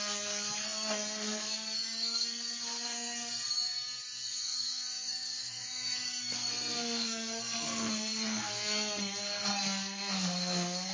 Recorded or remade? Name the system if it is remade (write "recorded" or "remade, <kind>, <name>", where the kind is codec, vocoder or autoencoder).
remade, codec, SNAC